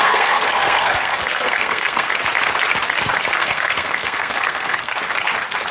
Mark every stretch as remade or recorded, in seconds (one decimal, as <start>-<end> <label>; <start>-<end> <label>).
0.0-2.1 remade; 2.1-3.3 recorded; 3.3-4.9 remade; 4.9-5.7 recorded